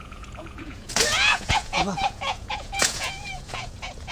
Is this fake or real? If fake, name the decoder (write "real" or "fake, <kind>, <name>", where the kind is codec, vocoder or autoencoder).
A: fake, vocoder, Vocos